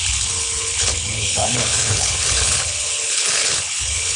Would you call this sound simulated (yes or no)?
yes